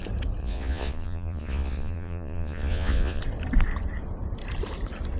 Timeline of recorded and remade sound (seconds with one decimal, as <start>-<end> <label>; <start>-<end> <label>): 0.0-0.4 recorded; 0.4-3.2 remade; 3.2-5.2 recorded